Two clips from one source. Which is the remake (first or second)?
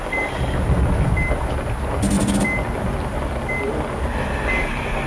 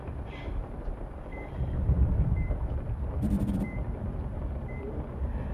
second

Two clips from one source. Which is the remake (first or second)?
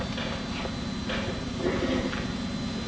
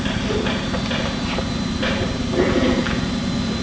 second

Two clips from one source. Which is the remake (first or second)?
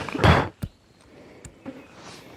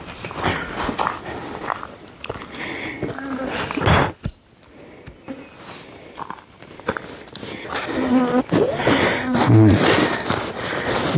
first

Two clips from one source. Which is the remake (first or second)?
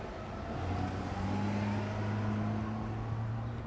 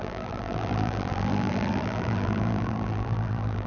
second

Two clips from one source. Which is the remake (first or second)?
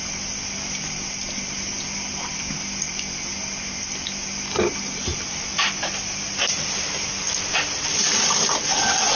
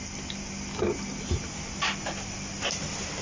first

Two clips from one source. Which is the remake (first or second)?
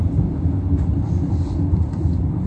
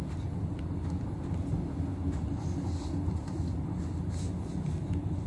first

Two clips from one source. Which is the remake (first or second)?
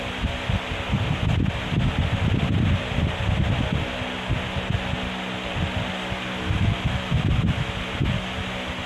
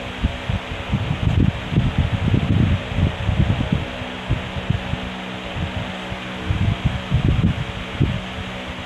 first